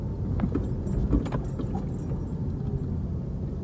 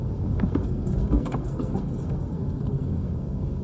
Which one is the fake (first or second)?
second